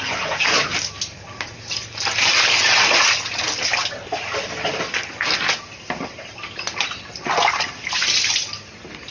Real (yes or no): yes